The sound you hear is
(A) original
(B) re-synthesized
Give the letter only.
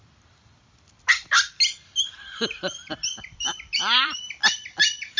B